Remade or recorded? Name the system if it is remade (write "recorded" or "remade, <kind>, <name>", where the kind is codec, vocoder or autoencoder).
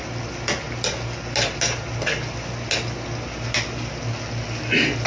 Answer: recorded